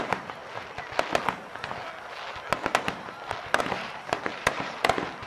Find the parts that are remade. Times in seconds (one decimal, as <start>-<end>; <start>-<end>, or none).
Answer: 0.0-0.4; 3.6-5.3